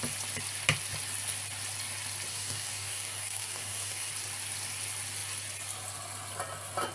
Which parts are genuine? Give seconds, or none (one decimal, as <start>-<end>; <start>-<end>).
0.0-2.3; 4.1-6.9

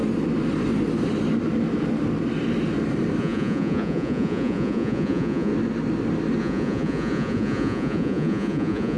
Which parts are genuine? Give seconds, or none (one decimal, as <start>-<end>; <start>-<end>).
0.0-3.2; 5.5-6.4

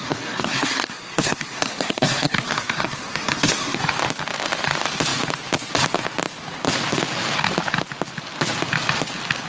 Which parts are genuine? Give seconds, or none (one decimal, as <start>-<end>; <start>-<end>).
3.8-9.5

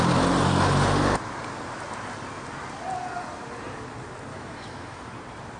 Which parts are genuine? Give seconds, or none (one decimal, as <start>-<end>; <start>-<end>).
0.0-4.3; 5.1-5.6

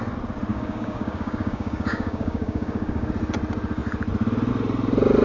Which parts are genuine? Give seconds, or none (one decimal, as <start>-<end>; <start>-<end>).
0.0-0.5; 3.1-5.2